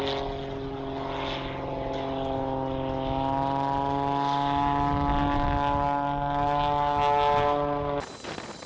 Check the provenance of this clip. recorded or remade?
recorded